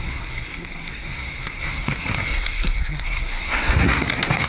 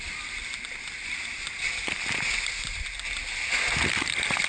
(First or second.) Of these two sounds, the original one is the second